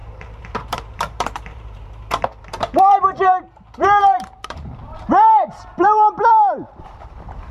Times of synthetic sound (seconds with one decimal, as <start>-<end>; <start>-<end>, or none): 0.0-7.5